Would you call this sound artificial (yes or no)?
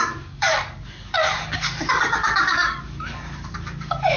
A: yes